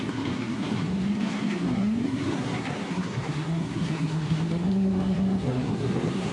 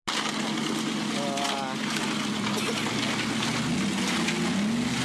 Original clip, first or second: second